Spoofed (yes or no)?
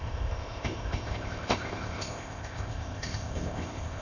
yes